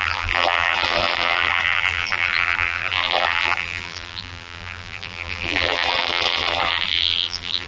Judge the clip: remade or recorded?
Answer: remade